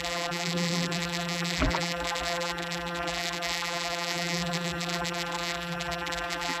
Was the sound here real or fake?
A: fake